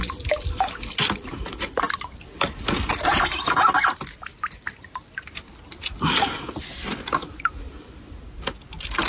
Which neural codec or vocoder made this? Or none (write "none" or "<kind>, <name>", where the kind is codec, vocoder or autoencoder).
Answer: none